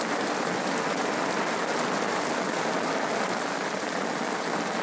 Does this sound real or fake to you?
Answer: real